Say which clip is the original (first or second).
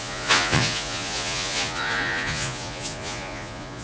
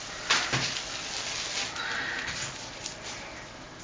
second